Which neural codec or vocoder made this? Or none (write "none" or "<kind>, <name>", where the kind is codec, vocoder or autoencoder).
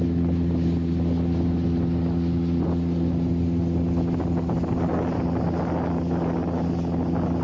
none